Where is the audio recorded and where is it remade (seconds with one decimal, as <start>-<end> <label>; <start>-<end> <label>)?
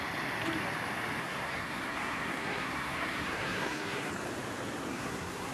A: 0.0-1.2 recorded; 1.2-4.1 remade; 4.1-4.9 recorded; 4.9-5.5 remade